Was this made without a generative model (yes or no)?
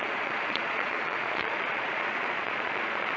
no